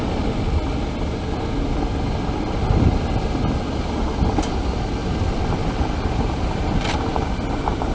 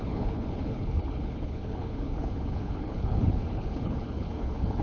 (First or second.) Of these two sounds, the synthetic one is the second